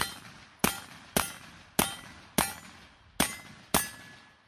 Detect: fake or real real